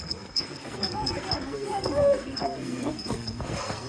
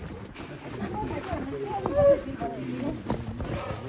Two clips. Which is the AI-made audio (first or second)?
first